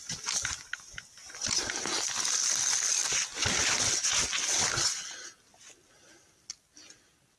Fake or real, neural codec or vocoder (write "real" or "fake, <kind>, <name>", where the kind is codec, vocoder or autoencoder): real